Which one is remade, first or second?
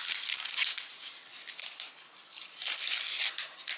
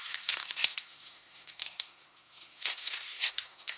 second